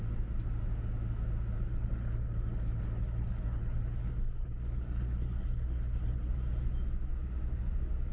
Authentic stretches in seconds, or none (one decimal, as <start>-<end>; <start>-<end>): 0.0-1.7; 6.3-8.1